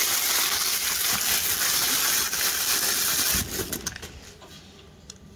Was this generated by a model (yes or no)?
no